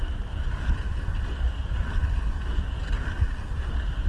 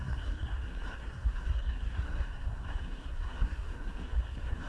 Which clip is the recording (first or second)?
first